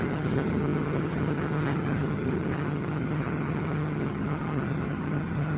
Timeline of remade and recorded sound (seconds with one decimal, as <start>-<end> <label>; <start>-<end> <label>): 0.0-5.6 remade